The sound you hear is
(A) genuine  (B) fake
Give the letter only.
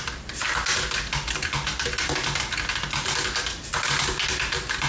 A